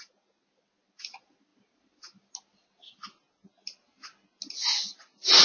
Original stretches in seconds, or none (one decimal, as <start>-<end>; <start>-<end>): 0.0-5.4